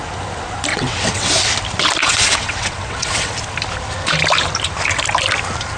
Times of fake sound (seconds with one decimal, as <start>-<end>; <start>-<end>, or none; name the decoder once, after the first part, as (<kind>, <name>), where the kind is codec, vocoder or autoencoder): 0.7-1.3 (vocoder, WaveNeXt); 2.0-3.3